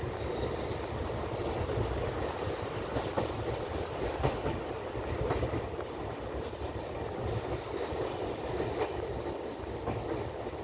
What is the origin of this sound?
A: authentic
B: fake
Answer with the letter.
A